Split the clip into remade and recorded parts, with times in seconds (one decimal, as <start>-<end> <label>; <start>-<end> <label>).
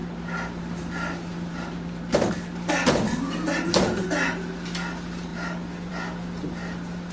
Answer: 0.0-2.3 remade; 2.3-7.1 recorded